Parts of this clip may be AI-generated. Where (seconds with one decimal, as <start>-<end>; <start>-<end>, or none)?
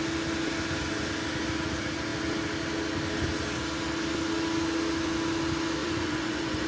5.8-6.7